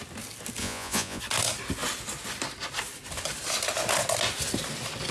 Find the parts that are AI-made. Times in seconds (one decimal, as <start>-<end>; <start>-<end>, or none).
0.6-1.2